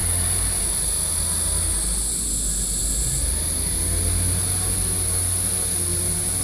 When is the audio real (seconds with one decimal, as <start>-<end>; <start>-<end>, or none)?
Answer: 0.0-6.4